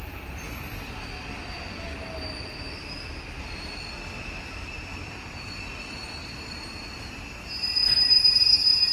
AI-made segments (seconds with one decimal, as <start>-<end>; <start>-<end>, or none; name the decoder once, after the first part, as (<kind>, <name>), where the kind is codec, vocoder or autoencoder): 0.0-0.7 (vocoder, BigVGAN v2); 4.6-6.2; 7.9-8.9